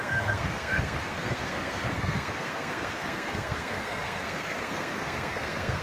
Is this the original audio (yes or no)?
no